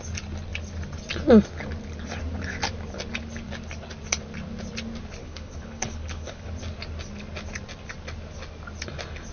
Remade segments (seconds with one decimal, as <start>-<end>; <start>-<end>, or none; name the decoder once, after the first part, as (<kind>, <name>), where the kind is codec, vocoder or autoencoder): 5.2-6.5 (codec, HILCodec)